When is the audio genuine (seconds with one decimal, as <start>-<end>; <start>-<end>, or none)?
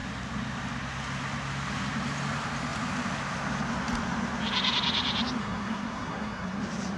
0.0-5.4; 6.6-7.0